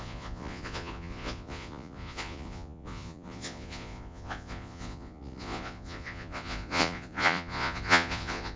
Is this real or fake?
fake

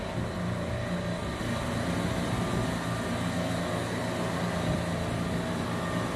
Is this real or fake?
real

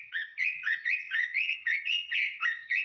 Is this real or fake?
fake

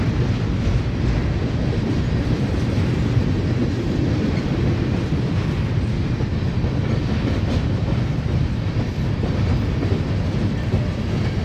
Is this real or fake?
fake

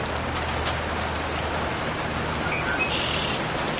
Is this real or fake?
real